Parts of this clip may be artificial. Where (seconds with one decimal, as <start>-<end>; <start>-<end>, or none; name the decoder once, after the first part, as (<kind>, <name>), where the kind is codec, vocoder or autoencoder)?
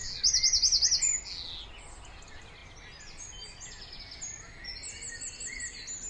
none